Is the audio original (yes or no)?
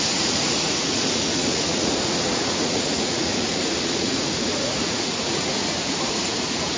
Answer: no